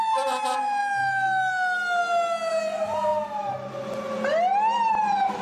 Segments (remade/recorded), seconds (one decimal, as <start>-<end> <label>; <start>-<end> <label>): 0.0-5.4 recorded